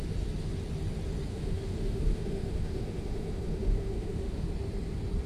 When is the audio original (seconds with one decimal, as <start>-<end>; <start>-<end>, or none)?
0.0-1.3; 4.5-5.3